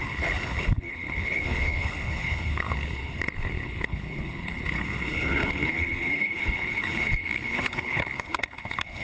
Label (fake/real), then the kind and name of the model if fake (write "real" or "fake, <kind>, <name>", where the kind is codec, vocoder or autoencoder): fake, codec, HILCodec